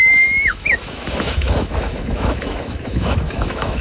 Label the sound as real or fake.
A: fake